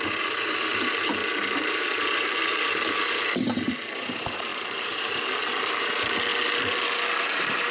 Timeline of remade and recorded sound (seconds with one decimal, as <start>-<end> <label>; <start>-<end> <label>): 0.0-1.2 remade; 1.2-1.7 recorded; 1.7-6.3 remade; 6.3-7.3 recorded; 7.3-7.7 remade